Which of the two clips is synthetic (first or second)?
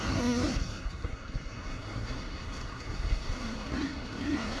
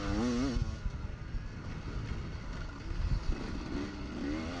first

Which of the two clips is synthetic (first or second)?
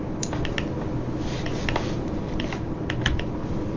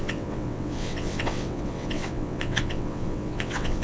second